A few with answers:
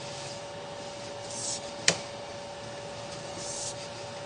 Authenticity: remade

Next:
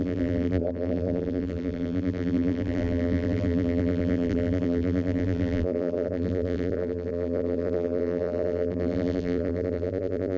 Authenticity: remade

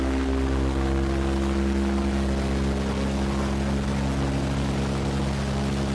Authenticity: recorded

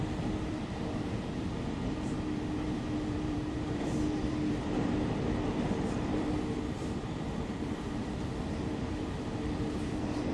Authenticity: remade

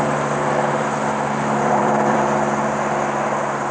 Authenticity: remade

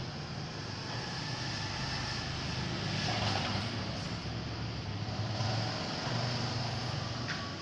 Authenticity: recorded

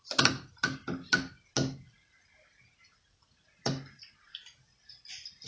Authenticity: recorded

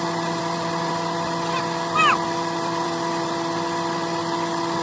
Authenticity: recorded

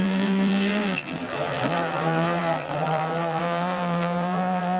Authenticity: remade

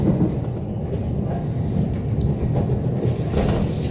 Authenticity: recorded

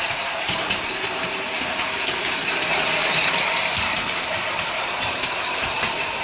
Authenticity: remade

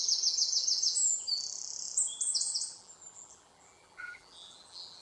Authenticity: remade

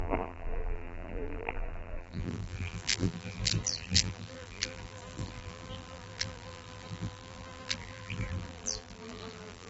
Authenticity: remade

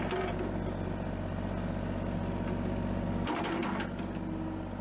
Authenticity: recorded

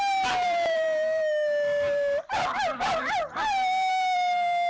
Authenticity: remade